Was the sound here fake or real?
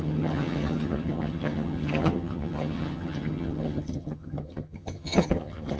fake